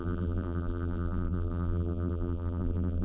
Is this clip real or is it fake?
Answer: fake